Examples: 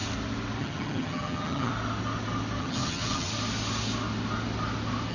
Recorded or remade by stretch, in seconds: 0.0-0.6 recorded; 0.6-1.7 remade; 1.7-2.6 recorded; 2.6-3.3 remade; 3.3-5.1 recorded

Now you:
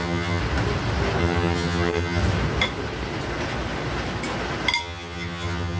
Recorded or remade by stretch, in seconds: 0.0-0.4 remade; 0.4-1.2 recorded; 1.2-2.2 remade; 2.2-4.8 recorded; 4.8-5.8 remade

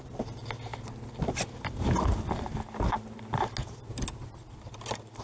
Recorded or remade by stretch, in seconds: 0.0-5.2 recorded

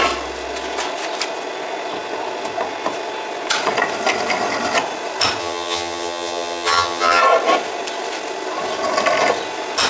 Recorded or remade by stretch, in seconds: 0.0-5.4 recorded; 5.4-7.2 remade; 7.2-9.9 recorded

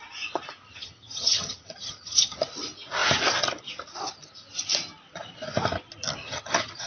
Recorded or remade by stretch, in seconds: 0.0-0.7 recorded; 0.7-2.4 remade; 2.4-6.2 recorded; 6.2-6.9 remade

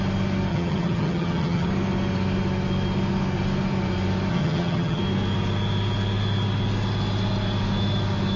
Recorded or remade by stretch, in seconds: 0.0-0.5 recorded; 0.5-1.7 remade; 1.7-4.3 recorded; 4.3-5.0 remade; 5.0-8.4 recorded

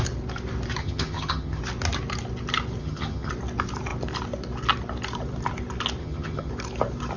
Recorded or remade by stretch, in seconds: 0.0-0.8 recorded; 0.8-1.6 remade; 1.6-2.8 recorded; 2.8-3.3 remade; 3.3-6.0 recorded; 6.0-6.5 remade; 6.5-7.2 recorded